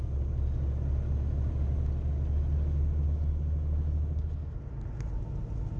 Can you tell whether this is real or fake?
real